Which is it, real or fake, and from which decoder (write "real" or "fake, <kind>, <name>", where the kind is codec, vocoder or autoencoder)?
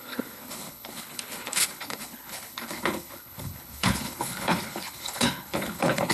fake, codec, HILCodec